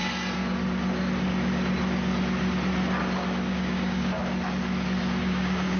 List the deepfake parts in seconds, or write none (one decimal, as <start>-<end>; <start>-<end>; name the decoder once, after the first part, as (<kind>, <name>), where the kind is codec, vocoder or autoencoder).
3.5-4.2 (codec, DAC); 5.2-5.8